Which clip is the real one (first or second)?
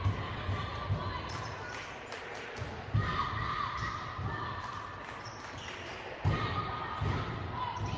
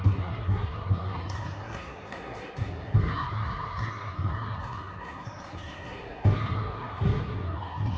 first